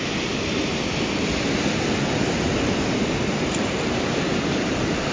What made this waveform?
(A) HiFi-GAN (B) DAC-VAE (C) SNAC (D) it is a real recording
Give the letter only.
D